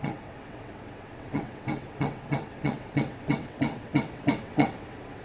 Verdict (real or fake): fake